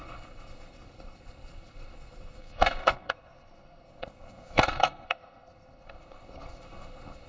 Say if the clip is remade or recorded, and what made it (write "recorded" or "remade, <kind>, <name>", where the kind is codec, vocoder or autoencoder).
remade, codec, SNAC